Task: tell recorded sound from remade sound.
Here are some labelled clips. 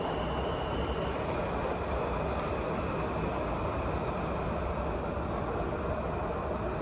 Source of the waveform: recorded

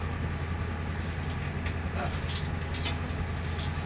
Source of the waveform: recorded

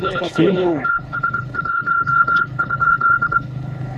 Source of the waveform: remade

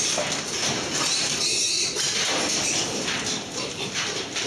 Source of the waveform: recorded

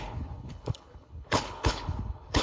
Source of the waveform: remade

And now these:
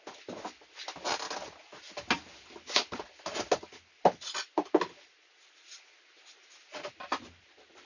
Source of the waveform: recorded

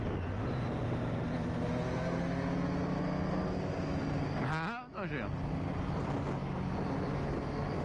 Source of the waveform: recorded